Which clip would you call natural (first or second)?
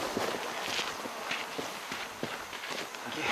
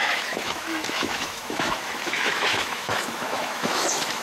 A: first